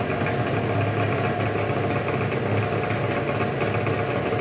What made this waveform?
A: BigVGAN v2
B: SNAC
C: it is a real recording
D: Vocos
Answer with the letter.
C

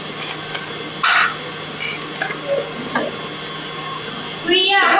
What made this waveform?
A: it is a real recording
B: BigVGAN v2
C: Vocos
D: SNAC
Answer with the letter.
A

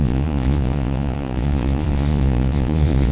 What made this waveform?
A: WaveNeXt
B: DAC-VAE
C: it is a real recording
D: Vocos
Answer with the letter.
D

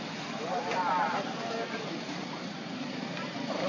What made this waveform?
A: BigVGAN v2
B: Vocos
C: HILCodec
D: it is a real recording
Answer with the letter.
D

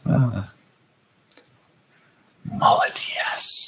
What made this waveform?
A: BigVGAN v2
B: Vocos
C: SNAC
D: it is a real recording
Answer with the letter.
B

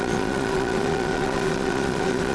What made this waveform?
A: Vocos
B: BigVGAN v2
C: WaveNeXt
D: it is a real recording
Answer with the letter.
A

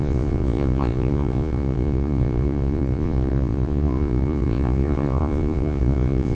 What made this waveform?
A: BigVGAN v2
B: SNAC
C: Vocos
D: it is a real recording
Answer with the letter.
C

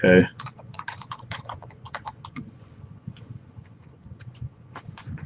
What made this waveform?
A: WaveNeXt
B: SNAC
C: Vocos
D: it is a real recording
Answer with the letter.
C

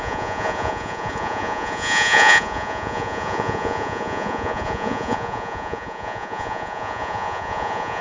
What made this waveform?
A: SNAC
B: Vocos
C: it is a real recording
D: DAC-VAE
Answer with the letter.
B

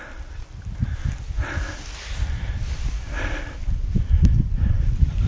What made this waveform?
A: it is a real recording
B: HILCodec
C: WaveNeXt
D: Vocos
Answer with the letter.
A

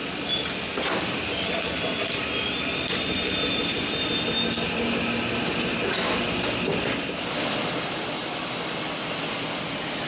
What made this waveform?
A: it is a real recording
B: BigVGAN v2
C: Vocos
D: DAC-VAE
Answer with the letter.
A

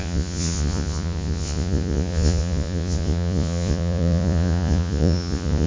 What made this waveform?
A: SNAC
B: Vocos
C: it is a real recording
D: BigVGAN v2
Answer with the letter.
B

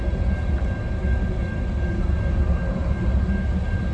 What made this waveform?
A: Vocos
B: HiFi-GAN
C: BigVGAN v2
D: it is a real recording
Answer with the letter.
D